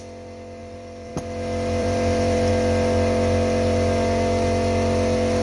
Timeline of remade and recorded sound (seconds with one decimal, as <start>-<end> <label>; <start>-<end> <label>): 0.0-0.6 recorded; 0.6-1.1 remade; 1.1-1.8 recorded; 1.8-2.5 remade; 2.5-5.4 recorded